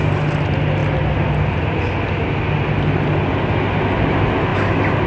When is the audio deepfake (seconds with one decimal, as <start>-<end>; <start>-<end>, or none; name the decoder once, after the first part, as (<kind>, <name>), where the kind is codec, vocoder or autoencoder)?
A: none